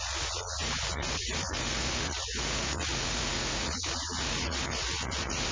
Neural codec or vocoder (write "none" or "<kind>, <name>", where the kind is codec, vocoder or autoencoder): vocoder, Vocos